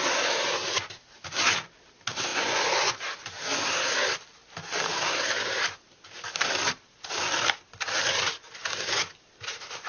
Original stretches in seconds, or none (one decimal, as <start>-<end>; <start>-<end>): 0.0-2.3; 3.0-9.9